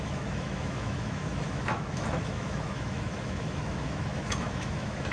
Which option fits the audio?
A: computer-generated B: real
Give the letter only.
A